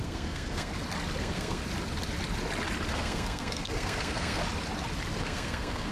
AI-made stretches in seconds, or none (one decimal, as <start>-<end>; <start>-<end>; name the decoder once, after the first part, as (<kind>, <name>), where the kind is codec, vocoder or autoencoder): 0.0-0.7 (codec, SNAC); 1.2-1.6; 2.9-4.4; 5.2-5.9